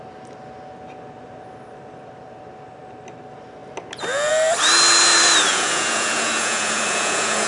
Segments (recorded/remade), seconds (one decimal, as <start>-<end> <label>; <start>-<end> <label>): 0.0-5.5 recorded; 5.5-7.5 remade